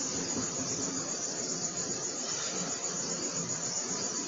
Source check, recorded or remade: remade